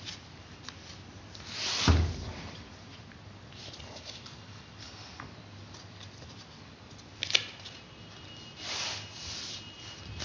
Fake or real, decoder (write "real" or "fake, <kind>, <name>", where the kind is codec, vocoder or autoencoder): real